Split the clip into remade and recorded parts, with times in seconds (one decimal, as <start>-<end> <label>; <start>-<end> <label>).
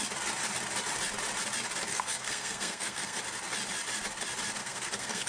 0.0-1.9 recorded; 1.9-3.2 remade; 3.2-4.6 recorded; 4.6-5.3 remade